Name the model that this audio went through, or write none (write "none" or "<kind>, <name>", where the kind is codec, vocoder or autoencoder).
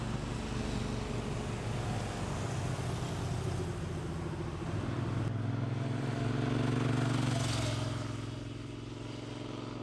none